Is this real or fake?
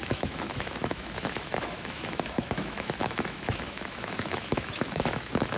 fake